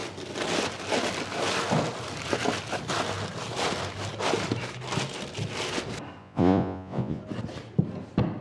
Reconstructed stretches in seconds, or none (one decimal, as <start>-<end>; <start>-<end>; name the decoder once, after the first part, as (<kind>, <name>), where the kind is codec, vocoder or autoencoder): 6.2-7.2 (vocoder, Vocos)